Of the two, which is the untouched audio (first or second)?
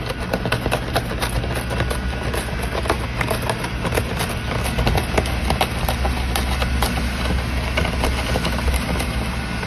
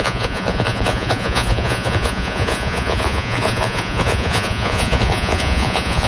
first